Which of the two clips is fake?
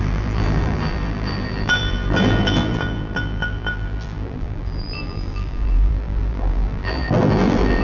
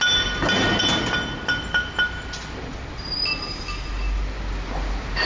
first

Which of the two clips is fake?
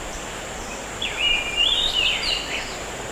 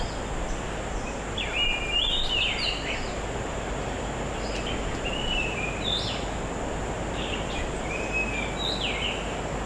first